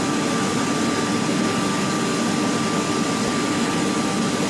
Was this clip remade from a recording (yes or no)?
no